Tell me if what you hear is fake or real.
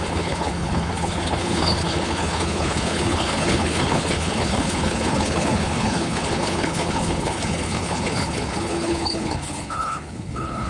fake